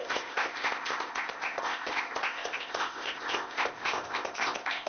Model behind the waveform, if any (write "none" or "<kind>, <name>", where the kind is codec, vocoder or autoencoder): codec, ZipCodec